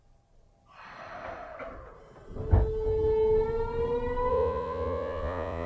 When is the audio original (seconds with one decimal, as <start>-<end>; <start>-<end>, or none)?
0.0-4.3